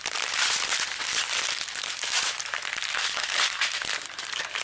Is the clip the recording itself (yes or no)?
no